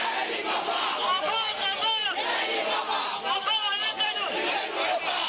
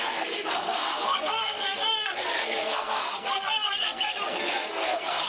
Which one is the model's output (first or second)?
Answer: second